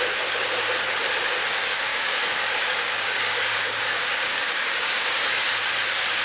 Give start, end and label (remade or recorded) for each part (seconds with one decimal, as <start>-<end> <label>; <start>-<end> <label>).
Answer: 0.0-1.9 recorded; 1.9-5.6 remade; 5.6-6.2 recorded